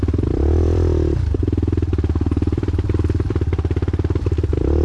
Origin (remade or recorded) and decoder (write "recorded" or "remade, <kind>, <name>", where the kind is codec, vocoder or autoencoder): remade, vocoder, BigVGAN v2